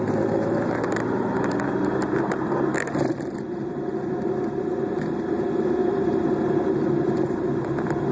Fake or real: real